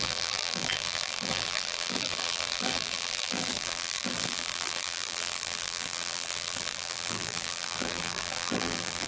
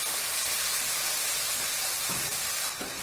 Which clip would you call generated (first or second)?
first